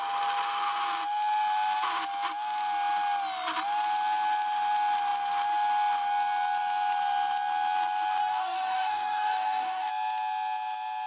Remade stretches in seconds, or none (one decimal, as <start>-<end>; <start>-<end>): 8.2-9.9